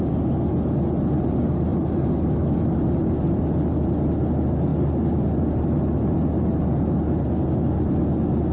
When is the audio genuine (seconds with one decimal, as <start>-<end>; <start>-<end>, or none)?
0.0-1.7; 3.4-8.5